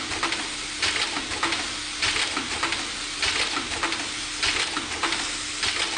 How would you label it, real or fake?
real